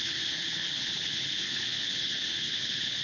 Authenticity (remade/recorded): remade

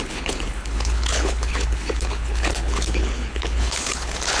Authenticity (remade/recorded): remade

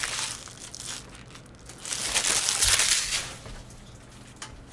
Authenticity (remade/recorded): recorded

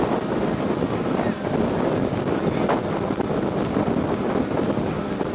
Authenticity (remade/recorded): recorded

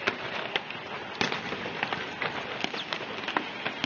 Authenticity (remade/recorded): recorded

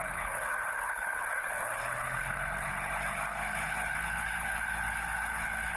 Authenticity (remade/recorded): remade